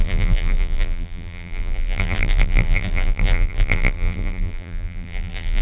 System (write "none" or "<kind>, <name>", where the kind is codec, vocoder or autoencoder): vocoder, BigVGAN v2